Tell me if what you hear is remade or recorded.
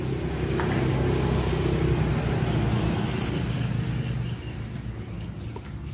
recorded